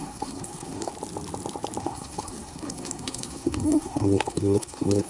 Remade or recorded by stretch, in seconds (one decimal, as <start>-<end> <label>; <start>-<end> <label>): 0.0-0.9 remade; 0.9-1.8 recorded; 1.8-5.1 remade